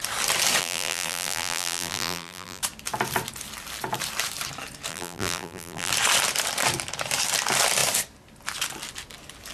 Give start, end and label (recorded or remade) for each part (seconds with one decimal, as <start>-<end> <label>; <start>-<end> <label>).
0.0-0.6 recorded; 0.6-2.6 remade; 2.6-4.9 recorded; 4.9-5.9 remade; 5.9-9.5 recorded